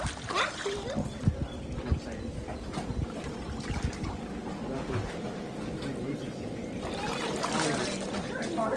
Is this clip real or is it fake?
real